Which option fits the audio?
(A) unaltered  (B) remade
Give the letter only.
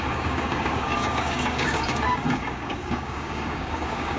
B